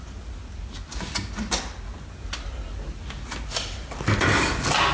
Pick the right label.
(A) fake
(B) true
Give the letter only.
B